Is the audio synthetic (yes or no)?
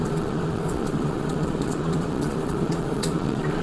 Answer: yes